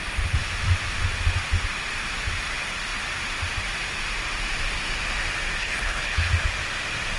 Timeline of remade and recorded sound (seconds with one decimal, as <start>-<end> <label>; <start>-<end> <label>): 0.0-5.6 recorded; 5.6-6.3 remade; 6.3-7.2 recorded